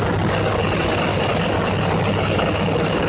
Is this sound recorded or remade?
recorded